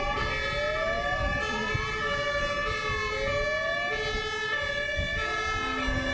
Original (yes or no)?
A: yes